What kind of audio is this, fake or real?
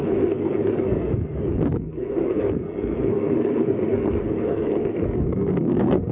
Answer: fake